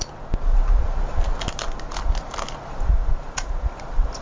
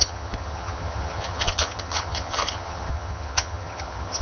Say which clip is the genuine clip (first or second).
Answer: first